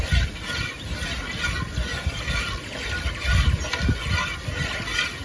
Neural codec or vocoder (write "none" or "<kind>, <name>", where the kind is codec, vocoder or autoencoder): none